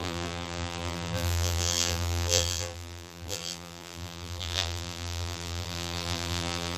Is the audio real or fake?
fake